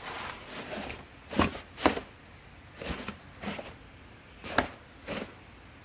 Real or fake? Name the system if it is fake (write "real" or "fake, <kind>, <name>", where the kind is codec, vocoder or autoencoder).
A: real